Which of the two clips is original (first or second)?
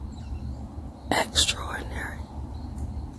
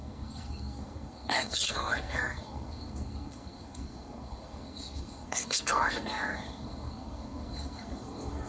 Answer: first